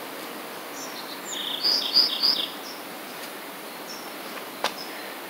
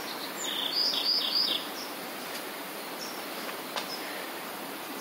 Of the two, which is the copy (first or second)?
second